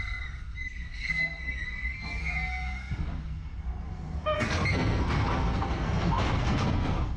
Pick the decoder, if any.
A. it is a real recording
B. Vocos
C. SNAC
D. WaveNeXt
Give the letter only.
C